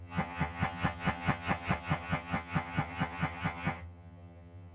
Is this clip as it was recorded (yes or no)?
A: no